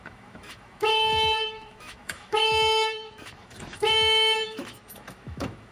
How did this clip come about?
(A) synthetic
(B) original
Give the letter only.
A